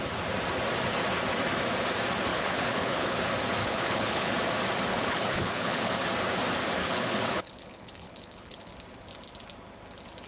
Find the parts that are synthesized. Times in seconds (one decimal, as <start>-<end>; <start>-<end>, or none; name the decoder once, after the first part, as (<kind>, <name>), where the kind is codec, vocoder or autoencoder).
2.3-3.2 (codec, HILCodec); 3.6-4.3; 4.9-5.9; 6.8-8.7